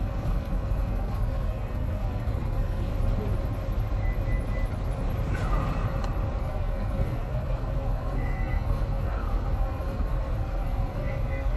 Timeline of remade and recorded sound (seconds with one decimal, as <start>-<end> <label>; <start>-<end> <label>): 0.0-2.9 remade; 2.9-6.4 recorded; 6.4-11.6 remade